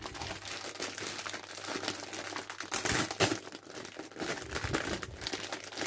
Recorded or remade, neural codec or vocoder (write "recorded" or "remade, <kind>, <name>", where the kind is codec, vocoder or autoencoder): recorded